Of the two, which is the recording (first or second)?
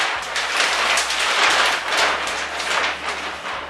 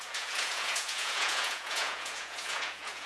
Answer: first